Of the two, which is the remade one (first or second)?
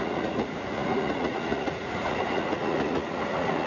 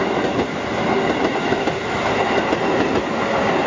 first